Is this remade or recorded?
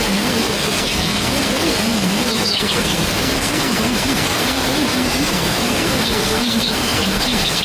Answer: remade